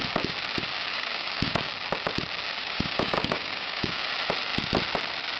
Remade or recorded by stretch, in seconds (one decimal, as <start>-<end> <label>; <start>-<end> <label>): 0.0-0.7 recorded; 0.7-1.7 remade; 1.7-2.6 recorded; 2.6-4.1 remade; 4.1-5.4 recorded